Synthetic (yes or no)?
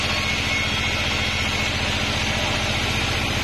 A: no